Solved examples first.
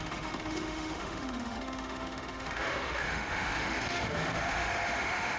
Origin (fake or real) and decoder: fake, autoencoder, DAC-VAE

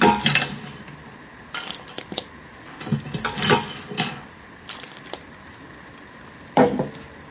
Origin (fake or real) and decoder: real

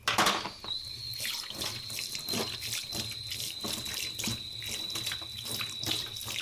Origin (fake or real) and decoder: real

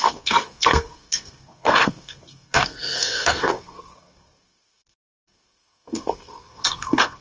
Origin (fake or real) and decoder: fake, codec, SNAC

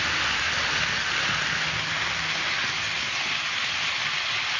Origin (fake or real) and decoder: real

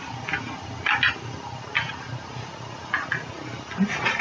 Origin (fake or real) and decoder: real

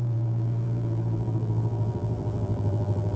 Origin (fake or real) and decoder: fake, vocoder, BigVGAN v2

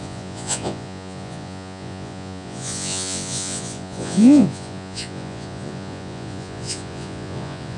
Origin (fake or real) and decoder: fake, vocoder, Vocos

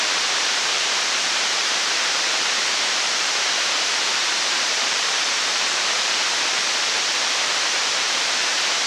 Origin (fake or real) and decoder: fake, vocoder, BigVGAN v2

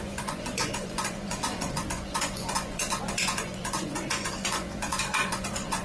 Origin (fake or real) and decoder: fake, vocoder, Vocos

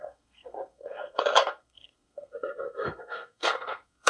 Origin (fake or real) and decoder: fake, codec, SNAC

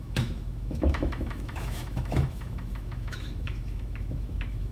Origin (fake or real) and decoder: fake, autoencoder, DAC-VAE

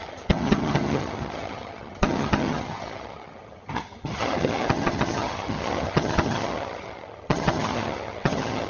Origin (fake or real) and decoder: fake, vocoder, HiFi-GAN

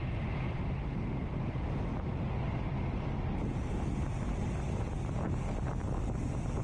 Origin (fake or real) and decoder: real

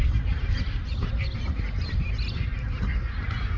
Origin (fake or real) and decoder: real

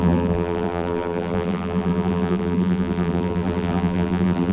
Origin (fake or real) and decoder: fake, vocoder, BigVGAN v2